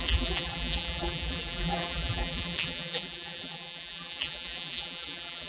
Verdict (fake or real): fake